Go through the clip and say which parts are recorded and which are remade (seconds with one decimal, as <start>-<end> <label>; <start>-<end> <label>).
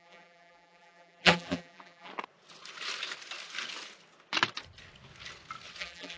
0.0-2.1 remade; 2.1-5.8 recorded; 5.8-6.2 remade